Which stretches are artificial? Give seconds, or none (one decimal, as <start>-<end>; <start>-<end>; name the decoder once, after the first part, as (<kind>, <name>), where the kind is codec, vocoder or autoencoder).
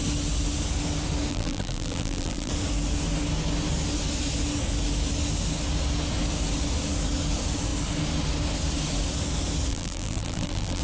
1.3-2.5 (vocoder, BigVGAN v2); 9.7-10.8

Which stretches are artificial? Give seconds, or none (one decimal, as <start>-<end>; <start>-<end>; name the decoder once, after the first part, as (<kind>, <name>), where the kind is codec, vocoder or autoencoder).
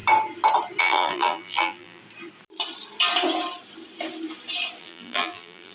0.8-2.0 (vocoder, BigVGAN v2); 4.8-5.7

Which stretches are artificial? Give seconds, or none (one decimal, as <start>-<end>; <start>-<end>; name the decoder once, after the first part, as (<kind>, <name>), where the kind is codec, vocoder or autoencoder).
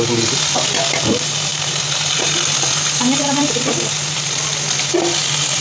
none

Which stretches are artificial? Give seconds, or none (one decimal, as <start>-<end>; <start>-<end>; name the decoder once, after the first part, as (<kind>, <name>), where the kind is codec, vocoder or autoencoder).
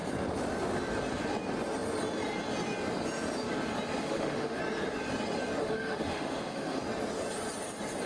4.0-4.6 (autoencoder, DAC-VAE); 5.6-6.8